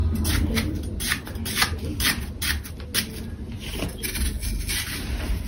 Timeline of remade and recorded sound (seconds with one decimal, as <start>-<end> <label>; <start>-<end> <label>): 0.0-5.5 recorded